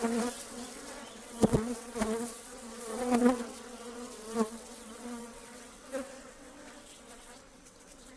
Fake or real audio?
fake